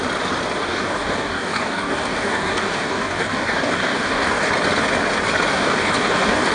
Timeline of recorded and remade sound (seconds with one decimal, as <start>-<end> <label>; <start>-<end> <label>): 0.0-0.6 recorded; 0.6-4.5 remade; 4.5-5.5 recorded; 5.5-6.5 remade